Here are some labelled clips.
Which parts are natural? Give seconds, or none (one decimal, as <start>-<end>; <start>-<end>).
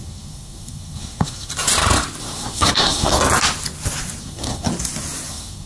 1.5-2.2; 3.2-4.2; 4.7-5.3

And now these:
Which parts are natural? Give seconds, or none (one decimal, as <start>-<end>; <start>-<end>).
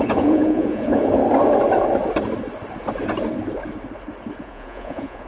1.2-4.4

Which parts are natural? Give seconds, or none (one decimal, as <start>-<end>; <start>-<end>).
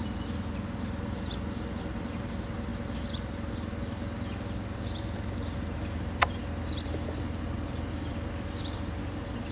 0.0-9.5